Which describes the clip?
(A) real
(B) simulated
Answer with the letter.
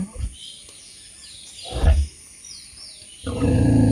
A